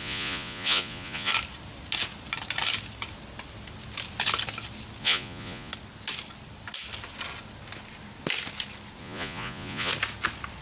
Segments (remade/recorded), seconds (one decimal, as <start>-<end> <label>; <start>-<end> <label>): 0.0-1.3 remade; 1.3-5.0 recorded; 5.0-5.7 remade; 5.7-9.0 recorded; 9.0-9.9 remade; 9.9-10.6 recorded